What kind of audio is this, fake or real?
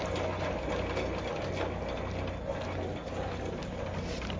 real